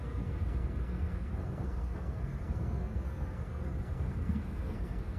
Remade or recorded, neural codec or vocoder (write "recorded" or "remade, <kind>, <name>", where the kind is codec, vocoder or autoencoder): remade, codec, SNAC